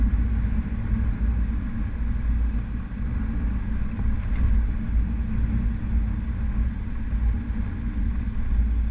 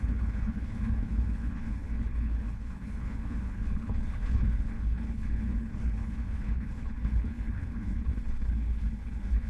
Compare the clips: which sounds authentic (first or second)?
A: first